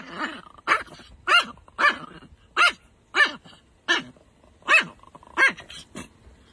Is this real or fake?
real